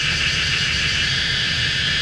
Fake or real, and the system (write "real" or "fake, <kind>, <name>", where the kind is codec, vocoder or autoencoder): real